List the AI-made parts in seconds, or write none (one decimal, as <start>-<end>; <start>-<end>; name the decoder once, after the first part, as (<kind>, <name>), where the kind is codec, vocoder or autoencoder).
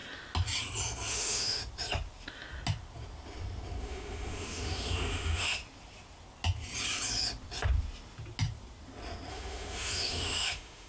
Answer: 1.1-1.6 (autoencoder, DAC-VAE); 3.8-5.6; 9.3-10.9